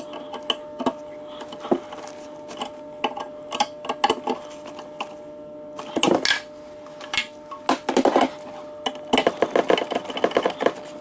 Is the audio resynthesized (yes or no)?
no